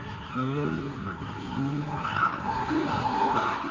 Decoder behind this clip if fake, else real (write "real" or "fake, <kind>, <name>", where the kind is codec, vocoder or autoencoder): fake, codec, SNAC